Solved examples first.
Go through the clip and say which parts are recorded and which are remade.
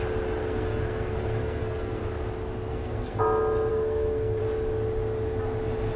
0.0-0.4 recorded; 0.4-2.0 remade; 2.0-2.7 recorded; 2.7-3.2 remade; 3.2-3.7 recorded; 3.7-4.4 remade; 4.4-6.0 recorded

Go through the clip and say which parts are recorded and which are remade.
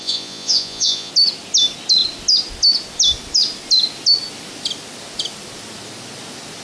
0.0-1.1 remade; 1.1-6.6 recorded